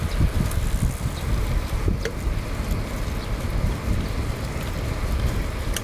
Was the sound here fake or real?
real